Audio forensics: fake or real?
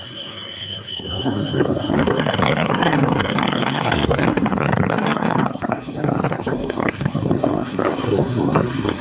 fake